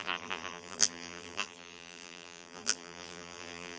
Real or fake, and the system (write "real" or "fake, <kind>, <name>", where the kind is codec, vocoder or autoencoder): fake, vocoder, BigVGAN v2